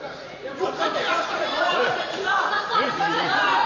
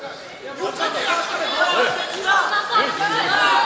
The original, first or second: second